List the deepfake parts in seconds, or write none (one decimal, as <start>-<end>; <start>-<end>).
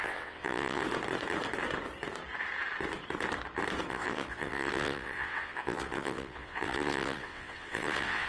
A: 0.0-0.8; 3.9-8.3